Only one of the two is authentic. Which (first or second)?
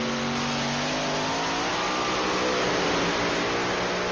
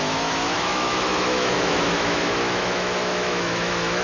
first